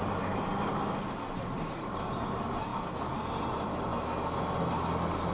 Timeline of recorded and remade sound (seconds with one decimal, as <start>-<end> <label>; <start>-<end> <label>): 0.0-0.5 remade; 0.5-1.3 recorded; 1.3-2.7 remade; 2.7-3.5 recorded; 3.5-3.9 remade; 3.9-5.3 recorded